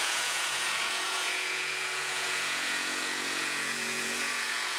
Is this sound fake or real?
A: fake